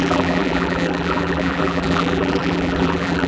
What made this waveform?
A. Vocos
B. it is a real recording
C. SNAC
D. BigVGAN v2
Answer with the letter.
D